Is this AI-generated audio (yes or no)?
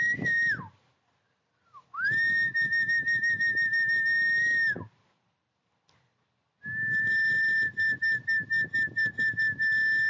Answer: no